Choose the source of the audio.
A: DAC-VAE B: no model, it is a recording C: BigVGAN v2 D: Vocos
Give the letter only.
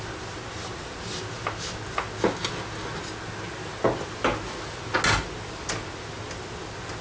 B